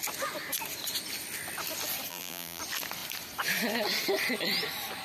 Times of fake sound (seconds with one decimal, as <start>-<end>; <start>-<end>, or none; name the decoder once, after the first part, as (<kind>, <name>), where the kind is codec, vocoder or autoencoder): 2.1-2.6 (vocoder, BigVGAN v2)